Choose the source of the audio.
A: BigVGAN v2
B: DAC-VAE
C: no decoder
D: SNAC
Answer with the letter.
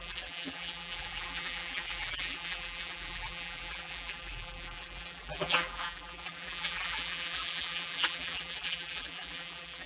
A